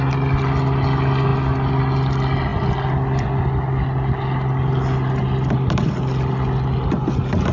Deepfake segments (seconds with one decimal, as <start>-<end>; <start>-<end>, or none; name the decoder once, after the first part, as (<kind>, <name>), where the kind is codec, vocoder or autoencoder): none

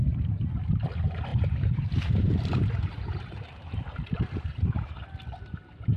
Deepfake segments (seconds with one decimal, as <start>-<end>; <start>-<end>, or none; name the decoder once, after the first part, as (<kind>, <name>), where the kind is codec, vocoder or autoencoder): 1.3-4.9 (vocoder, BigVGAN v2)

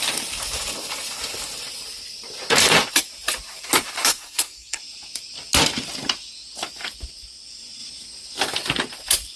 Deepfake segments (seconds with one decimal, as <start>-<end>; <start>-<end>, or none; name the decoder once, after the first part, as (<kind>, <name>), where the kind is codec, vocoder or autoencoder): 4.1-4.8 (codec, SNAC)

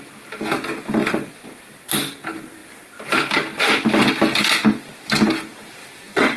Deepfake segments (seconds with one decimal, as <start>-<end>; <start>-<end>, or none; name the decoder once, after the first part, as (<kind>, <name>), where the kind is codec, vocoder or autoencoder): 1.0-1.5 (vocoder, Vocos); 5.8-6.4

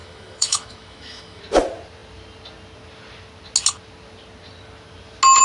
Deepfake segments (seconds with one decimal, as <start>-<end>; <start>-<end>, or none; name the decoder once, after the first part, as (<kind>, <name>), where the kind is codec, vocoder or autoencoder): 0.0-1.4 (autoencoder, DAC-VAE)

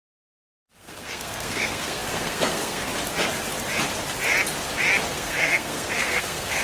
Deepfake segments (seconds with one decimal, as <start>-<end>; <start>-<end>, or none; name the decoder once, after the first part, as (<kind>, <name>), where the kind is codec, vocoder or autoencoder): 0.0-2.9 (codec, SNAC); 5.1-6.6

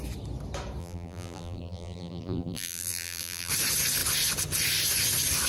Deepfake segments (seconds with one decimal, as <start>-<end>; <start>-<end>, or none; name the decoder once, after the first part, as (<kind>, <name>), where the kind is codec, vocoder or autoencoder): 0.8-3.5 (vocoder, BigVGAN v2)